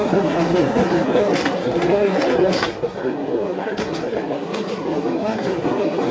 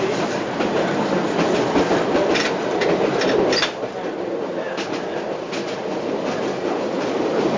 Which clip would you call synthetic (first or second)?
first